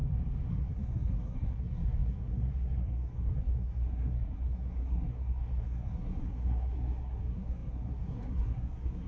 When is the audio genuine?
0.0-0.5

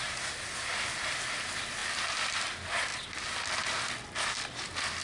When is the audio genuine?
0.0-5.0

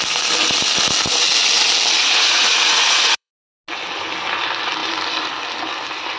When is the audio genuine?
0.0-2.0; 3.3-6.2

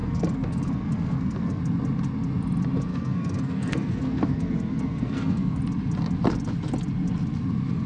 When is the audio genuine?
1.6-2.9; 5.6-7.9

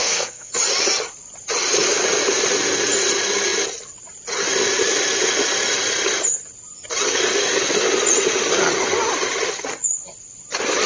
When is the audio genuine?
0.5-10.9

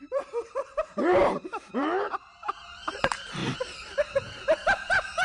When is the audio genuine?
3.4-4.3

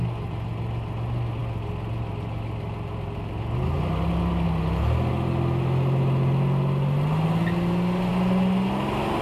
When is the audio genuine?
0.0-9.2